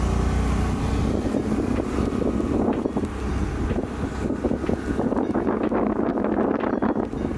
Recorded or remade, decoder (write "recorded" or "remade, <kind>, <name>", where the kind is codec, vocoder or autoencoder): recorded